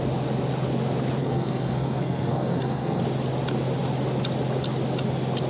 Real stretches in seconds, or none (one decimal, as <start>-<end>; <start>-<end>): 0.0-1.2; 3.0-5.5